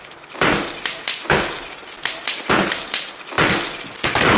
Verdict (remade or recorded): recorded